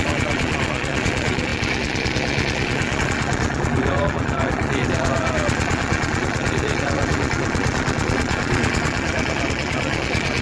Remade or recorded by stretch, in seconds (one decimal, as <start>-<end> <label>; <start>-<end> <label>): 0.0-10.4 remade